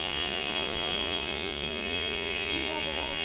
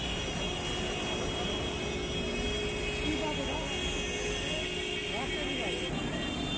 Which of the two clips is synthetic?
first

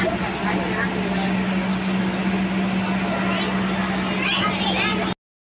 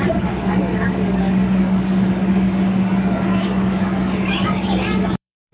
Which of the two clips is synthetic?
second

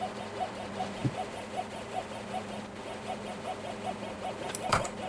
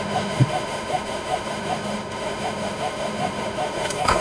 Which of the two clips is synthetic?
second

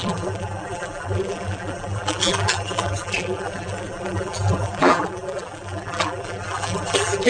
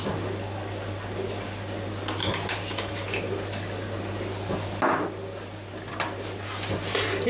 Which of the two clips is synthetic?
first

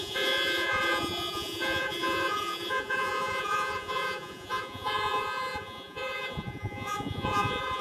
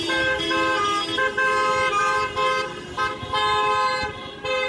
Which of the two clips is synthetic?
first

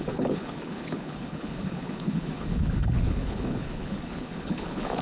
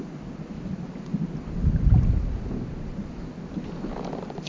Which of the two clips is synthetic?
first